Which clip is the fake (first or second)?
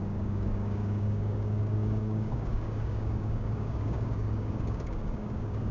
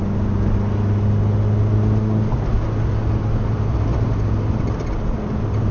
first